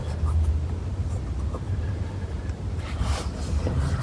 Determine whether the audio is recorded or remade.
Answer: recorded